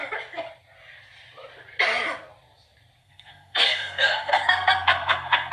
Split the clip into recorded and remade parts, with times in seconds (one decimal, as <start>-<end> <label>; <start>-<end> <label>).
0.0-3.0 recorded; 3.0-5.5 remade